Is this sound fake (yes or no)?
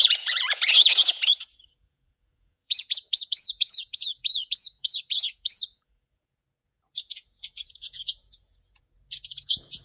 yes